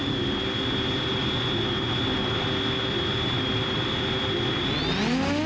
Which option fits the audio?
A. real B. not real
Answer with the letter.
A